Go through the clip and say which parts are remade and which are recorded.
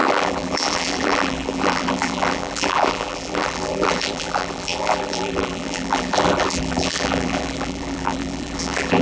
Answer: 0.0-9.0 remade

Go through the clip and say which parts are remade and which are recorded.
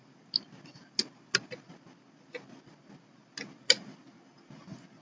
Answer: 0.0-5.0 recorded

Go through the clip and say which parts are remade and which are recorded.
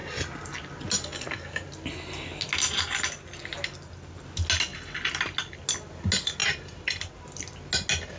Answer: 0.0-6.4 recorded; 6.4-7.1 remade; 7.1-8.2 recorded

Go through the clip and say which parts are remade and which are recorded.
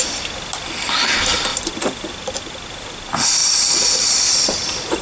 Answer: 0.0-1.5 recorded; 1.5-2.1 remade; 2.1-3.4 recorded; 3.4-5.0 remade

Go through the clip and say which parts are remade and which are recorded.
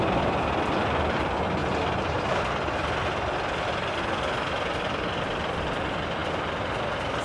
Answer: 0.0-1.6 remade; 1.6-2.3 recorded; 2.3-7.2 remade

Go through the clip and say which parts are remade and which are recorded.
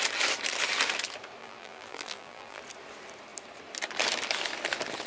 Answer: 0.0-1.4 recorded; 1.4-2.6 remade; 2.6-5.1 recorded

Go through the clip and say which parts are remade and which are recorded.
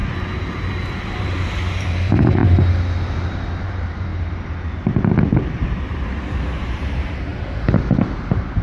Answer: 0.0-1.2 recorded; 1.2-2.4 remade; 2.4-3.1 recorded; 3.1-4.1 remade; 4.1-6.0 recorded; 6.0-8.6 remade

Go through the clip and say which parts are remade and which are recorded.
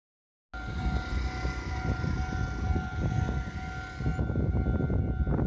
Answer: 0.0-5.5 recorded